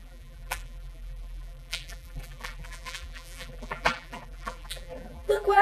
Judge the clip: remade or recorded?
remade